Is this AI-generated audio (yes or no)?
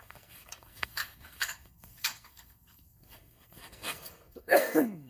yes